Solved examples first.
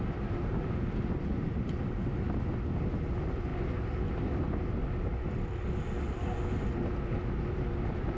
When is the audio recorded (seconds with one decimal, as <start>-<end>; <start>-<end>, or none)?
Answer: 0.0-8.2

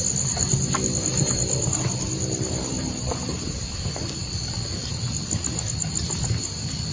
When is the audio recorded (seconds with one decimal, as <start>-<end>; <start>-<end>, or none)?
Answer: 0.0-1.1; 5.2-6.9

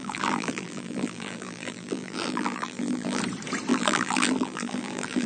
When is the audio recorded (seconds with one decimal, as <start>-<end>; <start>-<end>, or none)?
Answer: 3.2-3.7

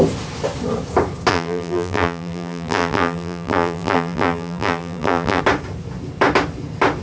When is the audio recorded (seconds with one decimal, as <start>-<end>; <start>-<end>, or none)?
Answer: 0.0-1.3; 5.4-7.0

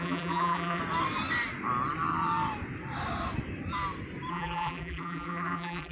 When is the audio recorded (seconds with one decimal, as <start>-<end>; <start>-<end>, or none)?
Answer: 0.8-4.3